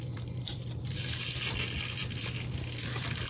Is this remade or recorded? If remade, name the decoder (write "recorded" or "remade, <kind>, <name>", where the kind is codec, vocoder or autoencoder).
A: remade, vocoder, BigVGAN v2